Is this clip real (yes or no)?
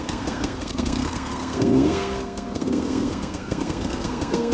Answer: no